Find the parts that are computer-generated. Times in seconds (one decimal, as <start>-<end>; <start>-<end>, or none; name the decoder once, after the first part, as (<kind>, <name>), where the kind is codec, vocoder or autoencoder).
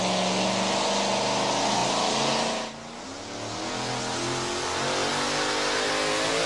none